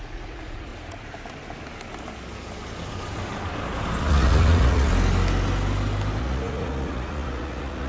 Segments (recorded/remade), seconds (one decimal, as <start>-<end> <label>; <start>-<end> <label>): 0.0-0.7 remade; 0.7-4.0 recorded; 4.0-4.9 remade; 4.9-6.2 recorded; 6.2-7.9 remade